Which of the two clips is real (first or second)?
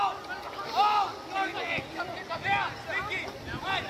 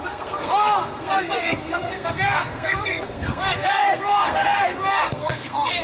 first